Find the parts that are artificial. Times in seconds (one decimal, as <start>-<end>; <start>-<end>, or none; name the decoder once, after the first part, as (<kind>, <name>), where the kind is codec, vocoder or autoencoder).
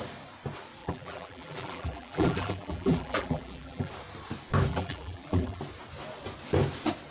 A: 0.8-3.9 (vocoder, BigVGAN v2); 4.7-5.6